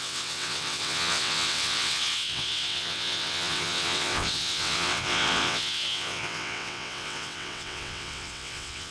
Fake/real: fake